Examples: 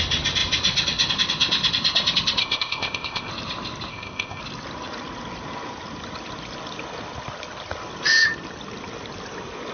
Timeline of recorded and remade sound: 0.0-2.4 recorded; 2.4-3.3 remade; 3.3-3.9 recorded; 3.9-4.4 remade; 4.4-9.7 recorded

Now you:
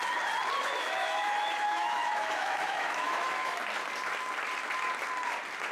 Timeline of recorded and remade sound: 0.0-0.6 recorded; 0.6-3.6 remade; 3.6-5.7 recorded

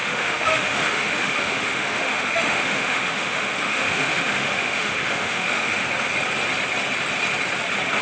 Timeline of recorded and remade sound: 0.0-5.8 remade; 5.8-8.0 recorded